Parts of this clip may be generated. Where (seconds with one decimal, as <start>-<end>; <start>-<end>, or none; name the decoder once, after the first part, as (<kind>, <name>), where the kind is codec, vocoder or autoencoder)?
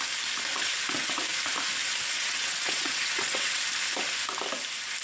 0.5-1.1 (vocoder, WaveNeXt); 1.8-3.6